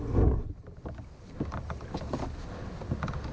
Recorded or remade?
recorded